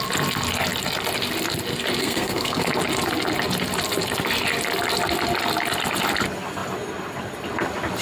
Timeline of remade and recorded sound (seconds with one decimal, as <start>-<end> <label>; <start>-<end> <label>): 0.0-2.0 recorded; 2.0-2.7 remade; 2.7-8.0 recorded